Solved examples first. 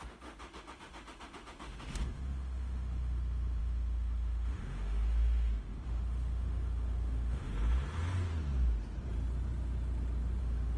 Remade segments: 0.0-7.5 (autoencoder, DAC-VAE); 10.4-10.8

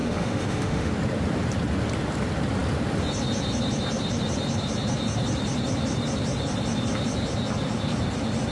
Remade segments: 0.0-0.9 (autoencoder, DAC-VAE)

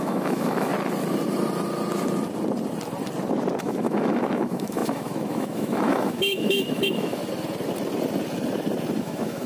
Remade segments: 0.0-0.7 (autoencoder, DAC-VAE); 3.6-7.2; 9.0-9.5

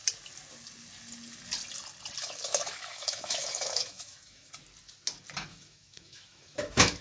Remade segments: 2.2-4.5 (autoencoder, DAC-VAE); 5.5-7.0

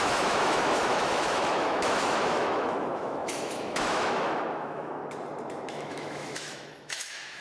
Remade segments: 0.0-5.0 (autoencoder, DAC-VAE); 5.7-7.4

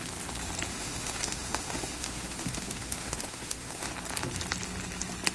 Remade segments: 0.7-3.9 (autoencoder, DAC-VAE)